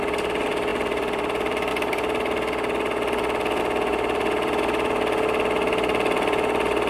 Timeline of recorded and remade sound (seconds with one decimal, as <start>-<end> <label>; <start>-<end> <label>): 0.0-0.7 recorded; 0.7-1.7 remade; 1.7-3.9 recorded; 3.9-4.6 remade; 4.6-6.9 recorded